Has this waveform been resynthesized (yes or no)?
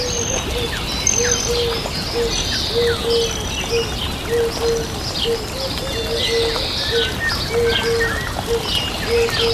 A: no